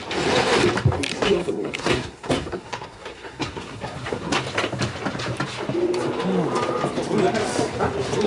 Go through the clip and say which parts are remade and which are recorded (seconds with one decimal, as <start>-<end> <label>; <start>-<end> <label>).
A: 0.0-1.1 recorded; 1.1-4.4 remade; 4.4-8.3 recorded